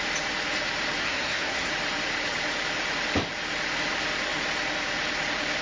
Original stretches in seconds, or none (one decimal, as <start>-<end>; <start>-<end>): 0.0-1.0; 1.7-5.6